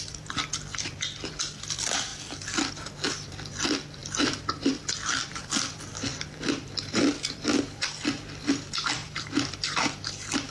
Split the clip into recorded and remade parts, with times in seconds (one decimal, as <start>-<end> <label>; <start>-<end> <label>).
0.0-2.1 remade; 2.1-2.7 recorded; 2.7-10.5 remade